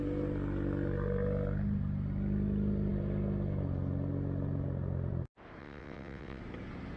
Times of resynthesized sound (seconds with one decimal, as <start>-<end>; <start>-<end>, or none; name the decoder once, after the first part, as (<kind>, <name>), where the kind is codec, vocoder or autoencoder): 5.6-6.4 (vocoder, WaveNeXt)